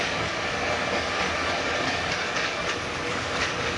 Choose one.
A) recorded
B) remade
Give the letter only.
B